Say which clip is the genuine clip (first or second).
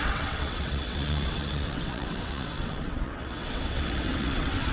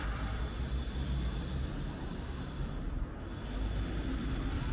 second